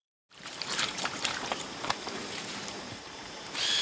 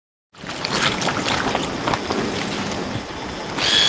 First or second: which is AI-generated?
first